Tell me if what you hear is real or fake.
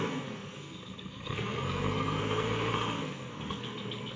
fake